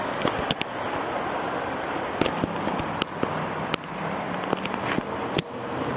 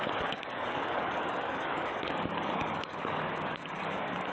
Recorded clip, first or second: first